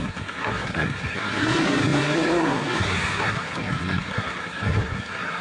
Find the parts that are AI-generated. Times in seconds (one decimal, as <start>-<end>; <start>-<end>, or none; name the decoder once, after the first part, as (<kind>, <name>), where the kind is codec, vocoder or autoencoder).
0.0-5.4 (codec, SNAC)